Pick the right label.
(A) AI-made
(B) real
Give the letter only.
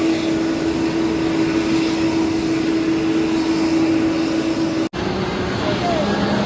B